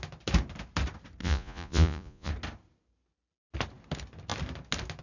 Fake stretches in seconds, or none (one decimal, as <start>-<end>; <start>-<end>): 1.2-2.3